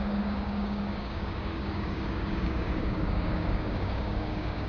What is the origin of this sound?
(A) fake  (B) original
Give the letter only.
A